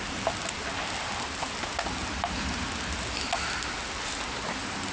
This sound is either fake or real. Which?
real